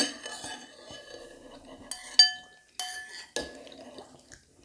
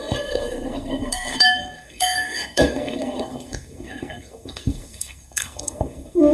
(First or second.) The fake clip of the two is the second